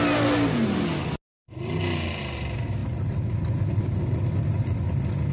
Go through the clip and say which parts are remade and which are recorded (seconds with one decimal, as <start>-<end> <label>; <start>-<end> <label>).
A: 0.0-5.3 recorded